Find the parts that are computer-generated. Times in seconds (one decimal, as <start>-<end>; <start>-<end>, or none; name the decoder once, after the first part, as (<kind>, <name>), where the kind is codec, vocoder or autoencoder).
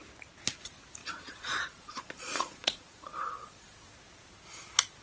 1.0-4.0 (vocoder, Vocos)